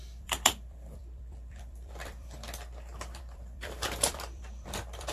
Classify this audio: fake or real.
fake